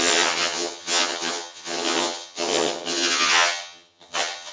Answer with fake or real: fake